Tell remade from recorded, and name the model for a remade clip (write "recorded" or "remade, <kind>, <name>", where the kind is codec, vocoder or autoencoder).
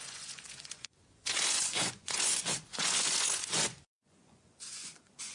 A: remade, vocoder, Vocos